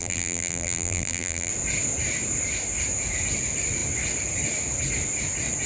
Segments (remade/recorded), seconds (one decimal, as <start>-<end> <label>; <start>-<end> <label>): 0.0-1.5 remade; 1.5-5.7 recorded